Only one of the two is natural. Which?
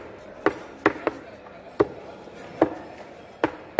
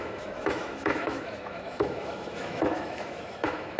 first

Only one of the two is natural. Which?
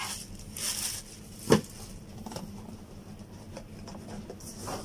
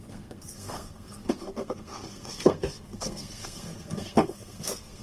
first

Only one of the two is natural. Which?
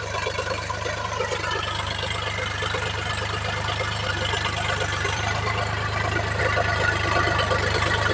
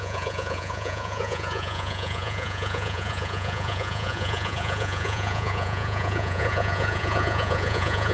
first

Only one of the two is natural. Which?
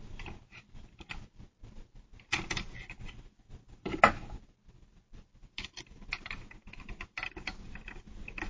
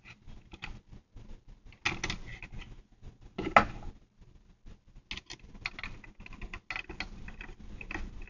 second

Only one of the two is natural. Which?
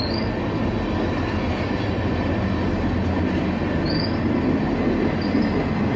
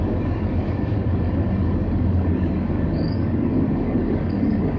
first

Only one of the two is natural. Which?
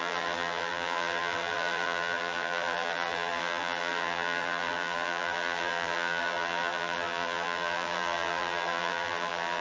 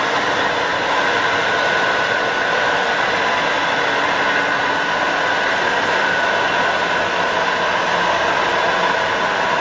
second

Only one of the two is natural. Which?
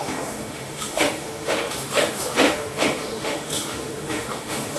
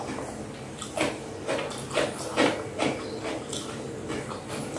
second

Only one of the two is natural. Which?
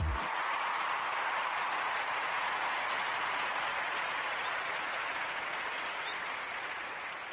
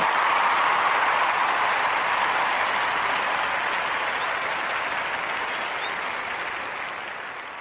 second